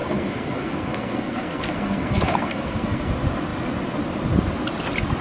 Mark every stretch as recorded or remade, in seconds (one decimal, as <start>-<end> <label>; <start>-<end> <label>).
0.0-3.1 remade; 3.1-5.2 recorded

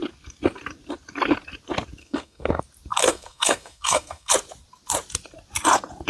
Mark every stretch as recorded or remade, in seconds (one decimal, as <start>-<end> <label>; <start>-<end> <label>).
0.0-2.0 recorded; 2.0-2.6 remade; 2.6-3.1 recorded; 3.1-4.3 remade; 4.3-6.1 recorded

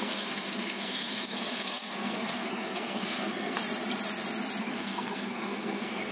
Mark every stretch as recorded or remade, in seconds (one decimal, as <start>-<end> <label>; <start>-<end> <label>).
0.0-3.6 remade; 3.6-4.6 recorded; 4.6-6.1 remade